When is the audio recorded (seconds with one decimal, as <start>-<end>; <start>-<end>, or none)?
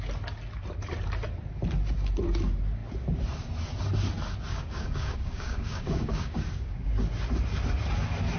0.0-4.5; 6.9-8.4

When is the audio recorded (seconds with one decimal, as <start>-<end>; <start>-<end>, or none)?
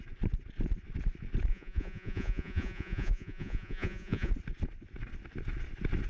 0.0-1.5; 4.3-6.1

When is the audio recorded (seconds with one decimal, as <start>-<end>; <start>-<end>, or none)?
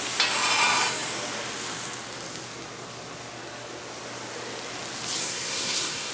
0.0-5.2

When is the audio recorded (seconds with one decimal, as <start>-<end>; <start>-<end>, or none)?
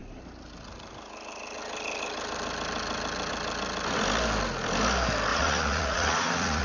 0.0-5.3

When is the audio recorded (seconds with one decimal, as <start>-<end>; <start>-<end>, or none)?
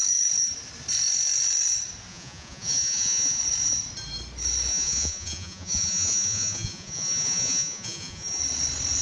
0.0-2.1; 3.4-4.7; 8.4-9.0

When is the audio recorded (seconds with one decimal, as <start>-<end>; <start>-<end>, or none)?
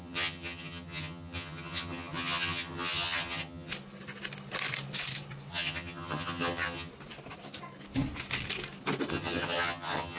3.7-5.5; 6.9-9.1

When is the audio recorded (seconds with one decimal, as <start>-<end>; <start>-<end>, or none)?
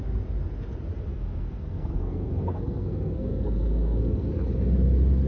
0.0-1.1; 4.3-5.3